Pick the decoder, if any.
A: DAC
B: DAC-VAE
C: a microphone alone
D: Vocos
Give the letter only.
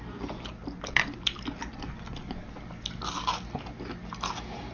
C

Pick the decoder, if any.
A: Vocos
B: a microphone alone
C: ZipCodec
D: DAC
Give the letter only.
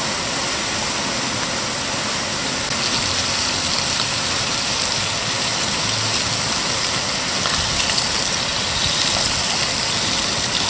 B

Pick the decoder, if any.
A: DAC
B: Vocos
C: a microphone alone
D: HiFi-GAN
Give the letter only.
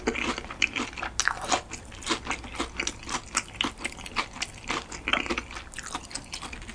C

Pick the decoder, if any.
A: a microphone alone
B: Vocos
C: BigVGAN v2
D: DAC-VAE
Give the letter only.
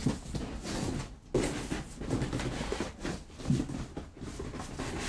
A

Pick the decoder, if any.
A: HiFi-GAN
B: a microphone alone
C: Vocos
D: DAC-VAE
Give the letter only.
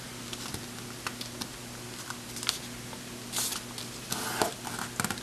B